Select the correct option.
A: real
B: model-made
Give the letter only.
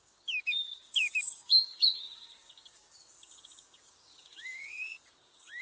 B